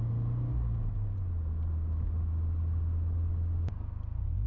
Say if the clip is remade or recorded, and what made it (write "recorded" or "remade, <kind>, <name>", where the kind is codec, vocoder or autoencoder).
recorded